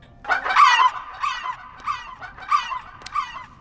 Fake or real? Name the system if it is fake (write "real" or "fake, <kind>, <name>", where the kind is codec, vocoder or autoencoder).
real